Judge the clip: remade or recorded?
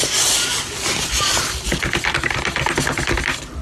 recorded